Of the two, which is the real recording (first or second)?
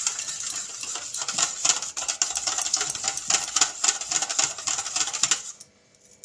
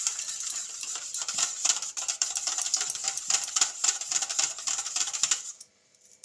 first